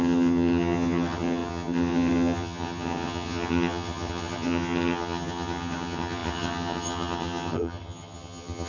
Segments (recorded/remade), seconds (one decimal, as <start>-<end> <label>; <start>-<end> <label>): 0.0-8.7 remade